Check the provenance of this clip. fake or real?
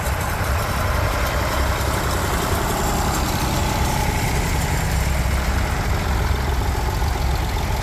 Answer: fake